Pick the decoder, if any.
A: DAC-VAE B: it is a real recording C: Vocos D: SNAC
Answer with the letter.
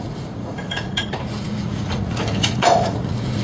C